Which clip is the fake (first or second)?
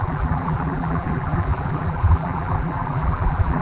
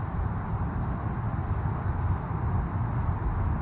first